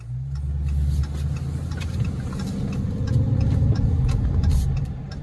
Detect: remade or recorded recorded